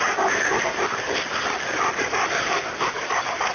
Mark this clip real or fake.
real